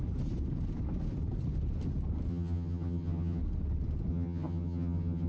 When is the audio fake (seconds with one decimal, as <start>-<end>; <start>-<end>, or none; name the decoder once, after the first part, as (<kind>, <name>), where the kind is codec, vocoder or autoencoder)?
2.3-3.4 (vocoder, HiFi-GAN); 4.1-5.3